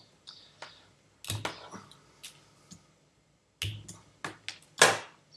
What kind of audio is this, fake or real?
real